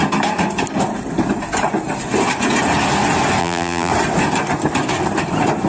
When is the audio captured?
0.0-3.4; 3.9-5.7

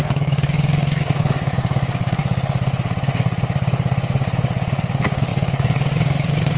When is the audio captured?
2.2-4.8

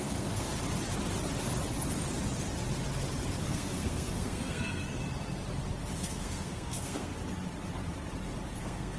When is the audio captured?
0.5-3.4; 5.0-6.0; 7.1-8.6

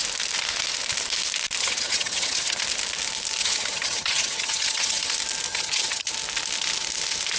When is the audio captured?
0.0-1.6; 2.6-3.4; 5.1-5.5; 6.1-7.4

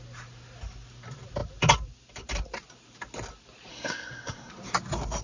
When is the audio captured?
0.0-3.7; 4.5-5.2

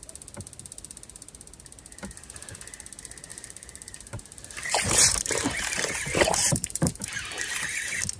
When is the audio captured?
0.0-3.3; 7.1-8.2

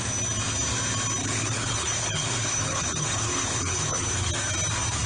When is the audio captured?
0.0-1.2; 4.3-5.1